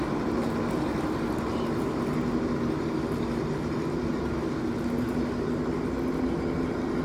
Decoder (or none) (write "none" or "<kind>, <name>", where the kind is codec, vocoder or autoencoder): none